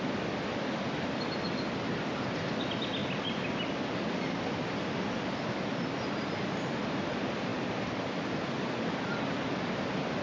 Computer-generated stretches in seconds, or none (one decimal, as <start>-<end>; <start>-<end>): none